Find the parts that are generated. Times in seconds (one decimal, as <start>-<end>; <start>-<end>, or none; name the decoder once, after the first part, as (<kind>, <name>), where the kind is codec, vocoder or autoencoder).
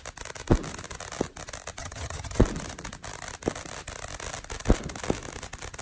1.8-2.4 (vocoder, HiFi-GAN)